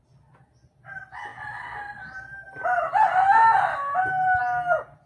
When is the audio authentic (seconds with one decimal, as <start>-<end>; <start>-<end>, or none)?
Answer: 0.0-5.1